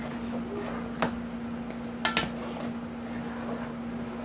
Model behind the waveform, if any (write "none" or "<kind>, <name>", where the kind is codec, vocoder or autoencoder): none